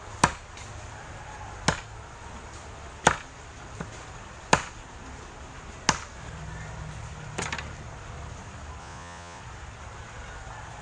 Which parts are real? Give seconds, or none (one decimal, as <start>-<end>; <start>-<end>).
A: 0.0-8.8; 9.4-10.8